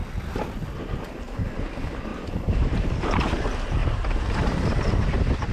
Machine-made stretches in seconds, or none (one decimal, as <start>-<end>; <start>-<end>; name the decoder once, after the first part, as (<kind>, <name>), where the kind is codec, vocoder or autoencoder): 2.1-3.4 (vocoder, BigVGAN v2); 3.8-4.8